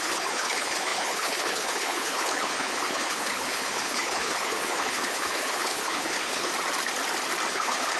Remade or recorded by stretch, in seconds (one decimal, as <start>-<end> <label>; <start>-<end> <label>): 0.0-6.5 remade; 6.5-7.5 recorded; 7.5-8.0 remade